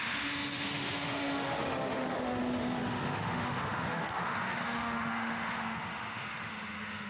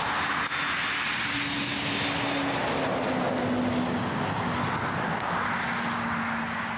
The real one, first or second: second